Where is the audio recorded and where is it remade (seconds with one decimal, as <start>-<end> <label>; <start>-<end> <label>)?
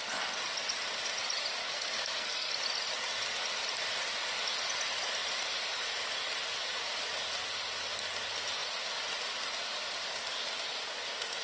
0.0-1.6 recorded; 1.6-2.5 remade; 2.5-11.4 recorded